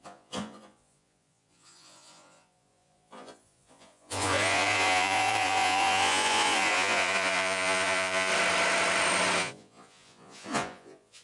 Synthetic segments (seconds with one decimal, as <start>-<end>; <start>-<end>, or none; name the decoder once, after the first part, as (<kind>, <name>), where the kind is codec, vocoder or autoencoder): 0.0-8.3 (vocoder, Vocos); 9.4-11.2